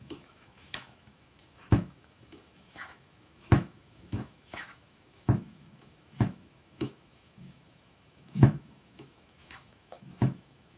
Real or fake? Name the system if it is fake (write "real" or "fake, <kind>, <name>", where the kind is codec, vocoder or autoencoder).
fake, autoencoder, DAC-VAE